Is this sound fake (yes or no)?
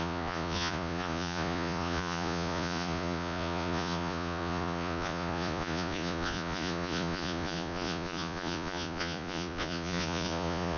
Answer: yes